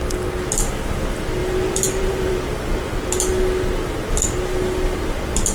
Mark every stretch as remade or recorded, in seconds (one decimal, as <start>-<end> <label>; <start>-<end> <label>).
0.0-1.4 recorded; 1.4-2.3 remade; 2.3-5.5 recorded